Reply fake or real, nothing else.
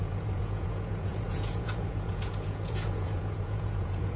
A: fake